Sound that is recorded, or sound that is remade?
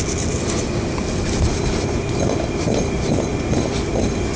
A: recorded